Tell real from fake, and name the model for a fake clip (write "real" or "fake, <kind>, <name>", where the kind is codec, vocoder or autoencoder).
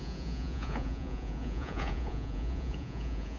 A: fake, vocoder, Vocos